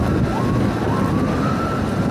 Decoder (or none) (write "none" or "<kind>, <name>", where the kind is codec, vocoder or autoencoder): none